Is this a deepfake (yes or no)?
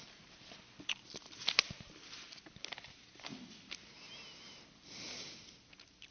no